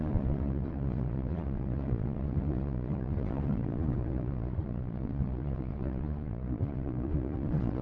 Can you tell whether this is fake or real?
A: fake